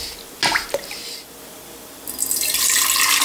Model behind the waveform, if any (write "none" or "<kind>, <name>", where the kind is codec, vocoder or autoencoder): none